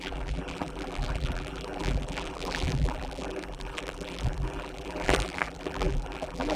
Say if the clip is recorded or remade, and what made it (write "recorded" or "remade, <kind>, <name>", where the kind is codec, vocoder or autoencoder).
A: remade, vocoder, BigVGAN v2